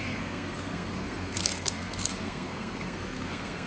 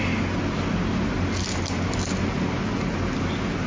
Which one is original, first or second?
second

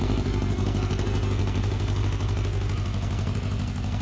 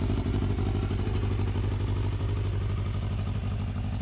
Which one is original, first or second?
second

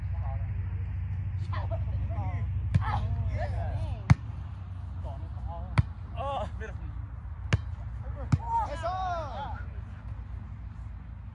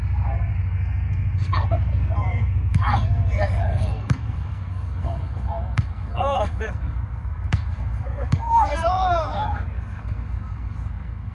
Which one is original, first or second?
first